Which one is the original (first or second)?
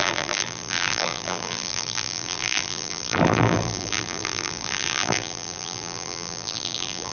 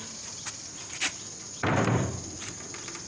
second